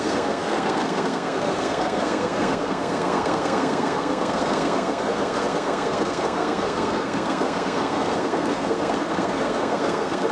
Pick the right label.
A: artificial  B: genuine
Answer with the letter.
A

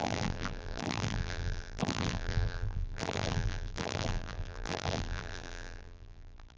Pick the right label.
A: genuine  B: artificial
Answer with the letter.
B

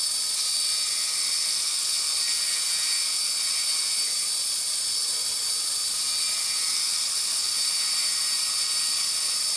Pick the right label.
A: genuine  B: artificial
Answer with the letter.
A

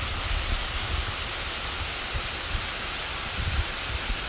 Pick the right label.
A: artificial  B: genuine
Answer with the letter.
A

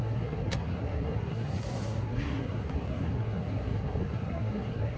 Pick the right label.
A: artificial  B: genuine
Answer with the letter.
A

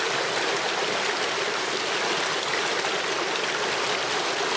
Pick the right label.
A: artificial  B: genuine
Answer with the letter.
B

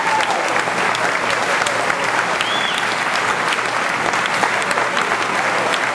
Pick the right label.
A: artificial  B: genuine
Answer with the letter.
B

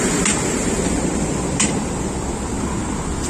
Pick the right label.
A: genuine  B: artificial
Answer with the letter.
A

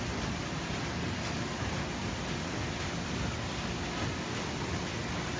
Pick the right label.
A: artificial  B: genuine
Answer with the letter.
B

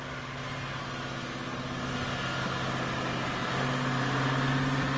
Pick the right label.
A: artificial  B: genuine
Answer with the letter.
B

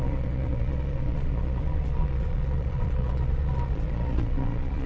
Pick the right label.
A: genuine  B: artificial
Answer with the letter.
B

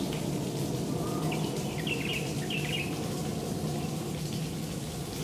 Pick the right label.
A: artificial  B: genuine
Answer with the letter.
B